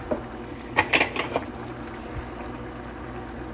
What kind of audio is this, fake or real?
real